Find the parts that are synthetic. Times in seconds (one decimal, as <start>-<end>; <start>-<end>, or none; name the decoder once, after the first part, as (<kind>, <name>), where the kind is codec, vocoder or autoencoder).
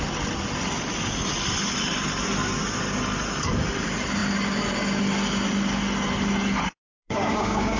6.9-7.8 (codec, DAC)